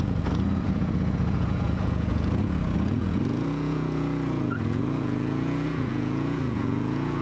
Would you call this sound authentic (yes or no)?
no